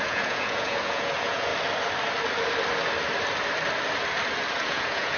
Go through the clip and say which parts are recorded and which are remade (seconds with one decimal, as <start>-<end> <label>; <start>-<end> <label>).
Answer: 0.0-1.5 remade; 1.5-4.6 recorded; 4.6-5.2 remade